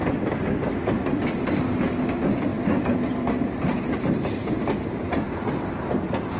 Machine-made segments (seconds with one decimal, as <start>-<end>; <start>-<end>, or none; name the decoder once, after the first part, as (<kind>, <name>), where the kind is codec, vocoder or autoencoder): none

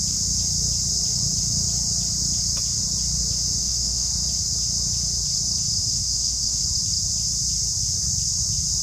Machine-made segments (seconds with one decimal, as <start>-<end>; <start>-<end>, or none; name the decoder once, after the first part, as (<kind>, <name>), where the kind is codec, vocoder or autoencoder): 3.6-4.1 (autoencoder, DAC-VAE); 5.8-6.6